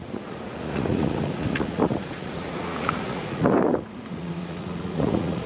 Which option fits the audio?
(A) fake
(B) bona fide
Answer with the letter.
A